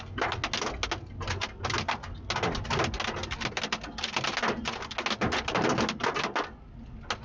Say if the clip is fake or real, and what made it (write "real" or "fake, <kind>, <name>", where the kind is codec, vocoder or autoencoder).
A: real